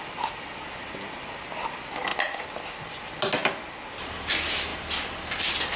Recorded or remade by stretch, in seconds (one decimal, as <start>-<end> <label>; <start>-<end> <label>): 0.0-2.1 recorded; 2.1-2.6 remade; 2.6-5.8 recorded